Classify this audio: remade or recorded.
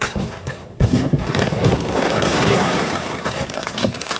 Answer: remade